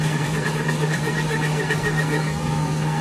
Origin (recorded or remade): remade